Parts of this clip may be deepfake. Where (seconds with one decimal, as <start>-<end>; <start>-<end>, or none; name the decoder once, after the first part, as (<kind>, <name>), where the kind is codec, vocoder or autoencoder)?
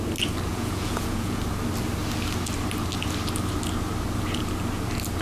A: 0.5-1.4 (vocoder, Vocos)